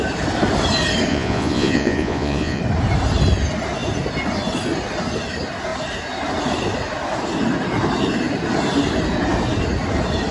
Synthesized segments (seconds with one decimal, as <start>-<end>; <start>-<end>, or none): 1.1-2.6